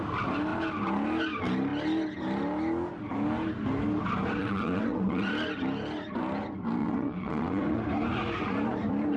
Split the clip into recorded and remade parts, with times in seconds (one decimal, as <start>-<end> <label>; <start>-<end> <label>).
0.0-4.4 recorded; 4.4-5.3 remade; 5.3-6.8 recorded; 6.8-7.8 remade; 7.8-9.2 recorded

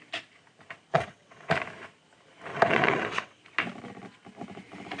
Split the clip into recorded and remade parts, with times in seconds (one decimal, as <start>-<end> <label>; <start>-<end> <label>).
0.0-0.9 recorded; 0.9-1.5 remade; 1.5-2.5 recorded; 2.5-3.4 remade; 3.4-5.0 recorded

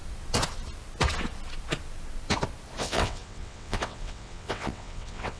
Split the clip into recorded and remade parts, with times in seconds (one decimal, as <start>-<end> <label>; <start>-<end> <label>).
0.0-2.8 recorded; 2.8-5.4 remade

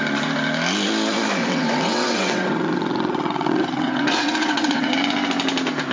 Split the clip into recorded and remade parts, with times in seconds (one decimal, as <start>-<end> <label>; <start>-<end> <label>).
0.0-1.4 recorded; 1.4-4.9 remade; 4.9-5.9 recorded

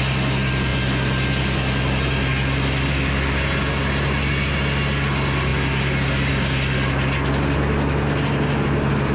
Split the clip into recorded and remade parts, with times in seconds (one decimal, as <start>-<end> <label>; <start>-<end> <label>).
0.0-9.1 recorded